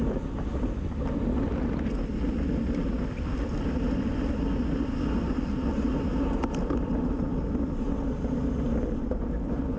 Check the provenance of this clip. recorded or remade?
recorded